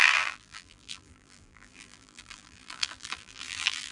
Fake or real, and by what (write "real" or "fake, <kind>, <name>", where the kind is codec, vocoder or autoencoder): fake, vocoder, BigVGAN v2